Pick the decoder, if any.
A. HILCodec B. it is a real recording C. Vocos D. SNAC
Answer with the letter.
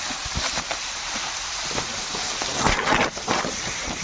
B